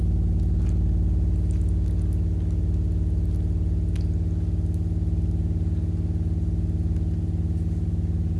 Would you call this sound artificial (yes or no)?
no